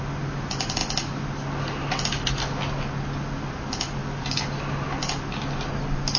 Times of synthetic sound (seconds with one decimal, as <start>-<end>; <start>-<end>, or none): none